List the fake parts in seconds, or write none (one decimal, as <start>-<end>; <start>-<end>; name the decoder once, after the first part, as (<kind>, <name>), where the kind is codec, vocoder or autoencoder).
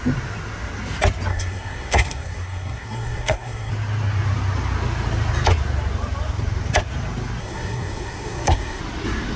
1.3-3.7 (codec, SNAC); 7.4-8.8